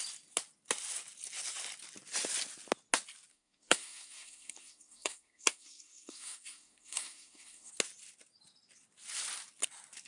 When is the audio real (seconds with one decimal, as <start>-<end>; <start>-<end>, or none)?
0.0-3.3; 7.7-10.1